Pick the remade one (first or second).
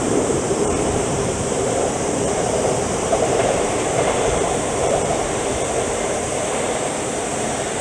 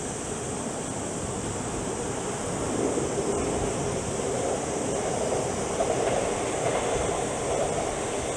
first